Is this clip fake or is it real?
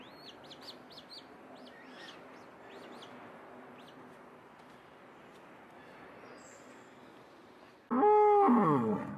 real